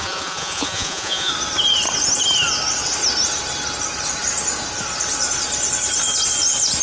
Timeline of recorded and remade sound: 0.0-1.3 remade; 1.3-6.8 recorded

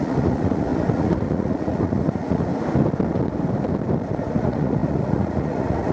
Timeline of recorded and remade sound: 0.0-2.5 remade; 2.5-4.1 recorded; 4.1-5.9 remade